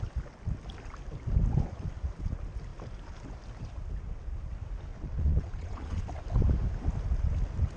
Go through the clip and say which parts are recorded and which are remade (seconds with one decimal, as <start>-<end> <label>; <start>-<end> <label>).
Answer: 0.0-4.9 recorded; 4.9-6.1 remade; 6.1-7.8 recorded